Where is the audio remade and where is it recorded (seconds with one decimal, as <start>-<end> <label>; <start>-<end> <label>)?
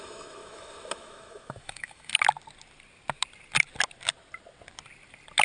0.0-2.1 remade; 2.1-5.4 recorded